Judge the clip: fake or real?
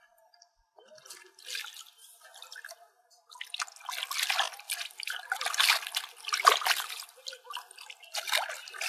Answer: real